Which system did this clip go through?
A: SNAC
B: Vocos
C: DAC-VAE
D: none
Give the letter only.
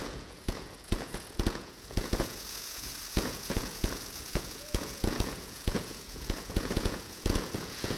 B